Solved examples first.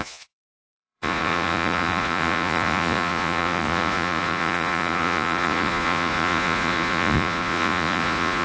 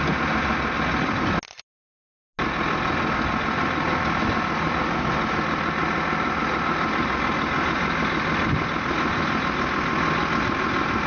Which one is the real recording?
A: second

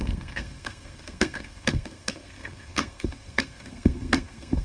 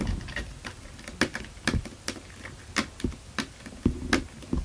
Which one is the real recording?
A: second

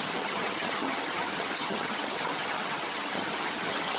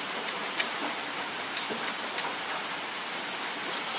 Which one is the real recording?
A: second